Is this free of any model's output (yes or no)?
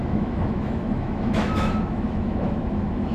no